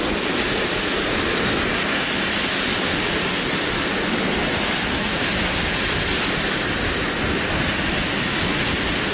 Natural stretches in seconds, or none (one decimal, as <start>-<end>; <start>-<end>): 0.0-9.1